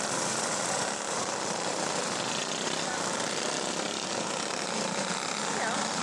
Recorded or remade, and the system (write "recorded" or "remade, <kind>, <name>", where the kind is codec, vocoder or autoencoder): recorded